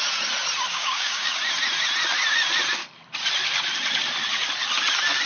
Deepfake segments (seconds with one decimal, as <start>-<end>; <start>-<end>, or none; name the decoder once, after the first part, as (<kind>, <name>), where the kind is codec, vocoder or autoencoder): 0.7-1.4 (codec, DAC)